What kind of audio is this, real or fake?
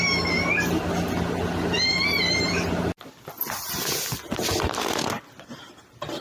real